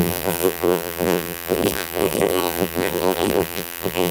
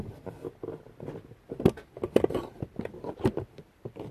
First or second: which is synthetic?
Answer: first